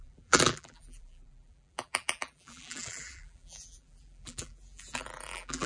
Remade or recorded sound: remade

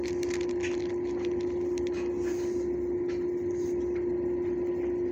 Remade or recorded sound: recorded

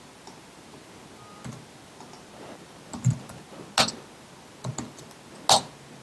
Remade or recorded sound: recorded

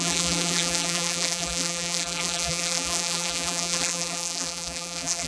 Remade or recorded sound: remade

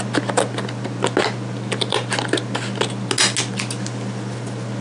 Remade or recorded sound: recorded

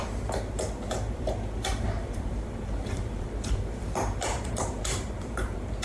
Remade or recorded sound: remade